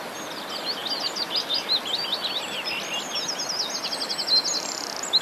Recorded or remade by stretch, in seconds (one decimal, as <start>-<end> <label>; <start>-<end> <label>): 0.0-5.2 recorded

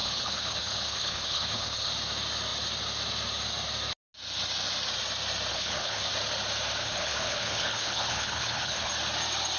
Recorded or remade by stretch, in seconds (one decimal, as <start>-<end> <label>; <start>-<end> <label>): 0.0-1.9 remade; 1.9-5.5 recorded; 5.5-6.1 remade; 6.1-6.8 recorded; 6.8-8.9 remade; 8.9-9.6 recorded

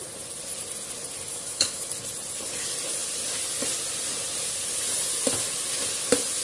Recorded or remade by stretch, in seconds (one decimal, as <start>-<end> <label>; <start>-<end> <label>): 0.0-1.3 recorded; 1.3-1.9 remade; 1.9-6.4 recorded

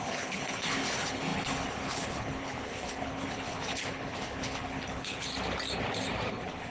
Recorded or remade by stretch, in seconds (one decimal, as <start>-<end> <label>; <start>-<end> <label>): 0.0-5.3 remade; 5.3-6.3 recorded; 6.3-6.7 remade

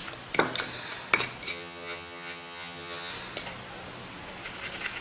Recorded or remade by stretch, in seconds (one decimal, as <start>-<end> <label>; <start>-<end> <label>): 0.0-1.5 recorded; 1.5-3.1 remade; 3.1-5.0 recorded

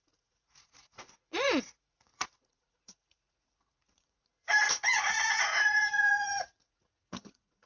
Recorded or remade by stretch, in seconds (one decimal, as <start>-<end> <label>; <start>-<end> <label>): 0.0-7.7 remade

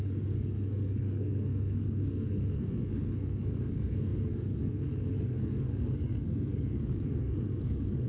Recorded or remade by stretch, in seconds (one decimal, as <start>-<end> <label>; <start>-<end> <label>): 0.0-8.1 remade

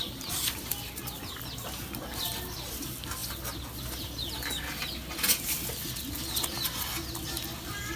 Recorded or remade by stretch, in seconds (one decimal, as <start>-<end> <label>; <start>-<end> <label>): 0.0-8.0 recorded